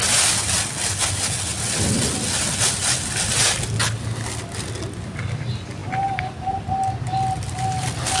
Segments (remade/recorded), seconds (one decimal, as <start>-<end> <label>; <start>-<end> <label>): 0.0-8.2 recorded